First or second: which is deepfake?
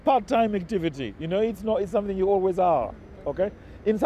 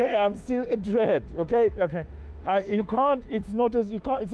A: second